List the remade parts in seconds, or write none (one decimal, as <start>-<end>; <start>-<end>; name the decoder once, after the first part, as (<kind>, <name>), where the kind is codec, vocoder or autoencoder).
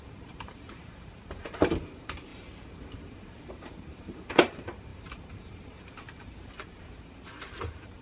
0.0-8.0 (vocoder, BigVGAN v2)